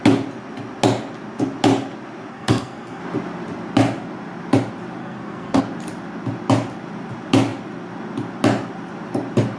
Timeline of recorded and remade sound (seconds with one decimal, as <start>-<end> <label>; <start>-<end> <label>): 0.0-2.3 recorded; 2.3-3.0 remade; 3.0-5.0 recorded; 5.0-5.6 remade; 5.6-9.6 recorded